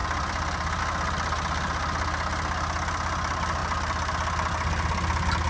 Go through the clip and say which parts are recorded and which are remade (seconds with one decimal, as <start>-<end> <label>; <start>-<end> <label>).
0.0-5.5 recorded